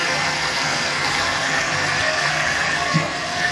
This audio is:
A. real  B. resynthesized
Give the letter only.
B